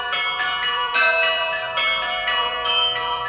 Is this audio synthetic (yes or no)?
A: yes